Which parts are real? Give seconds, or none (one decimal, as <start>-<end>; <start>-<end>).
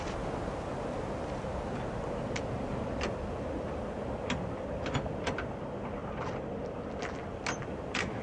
0.0-8.2